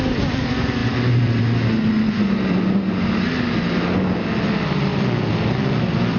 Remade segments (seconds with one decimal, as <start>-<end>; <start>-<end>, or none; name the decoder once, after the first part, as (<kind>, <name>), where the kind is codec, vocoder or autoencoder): 0.8-1.4 (vocoder, BigVGAN v2); 4.9-6.2